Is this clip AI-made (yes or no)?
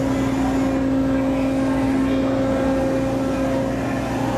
no